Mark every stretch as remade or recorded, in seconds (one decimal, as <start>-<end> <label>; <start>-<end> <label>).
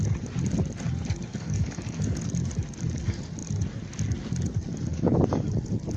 0.0-1.3 recorded; 1.3-2.2 remade; 2.2-4.9 recorded; 4.9-5.5 remade; 5.5-6.0 recorded